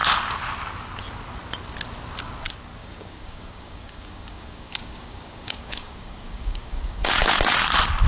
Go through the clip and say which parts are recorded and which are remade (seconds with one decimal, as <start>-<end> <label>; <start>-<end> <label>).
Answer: 0.0-2.8 recorded; 2.8-7.1 remade; 7.1-8.1 recorded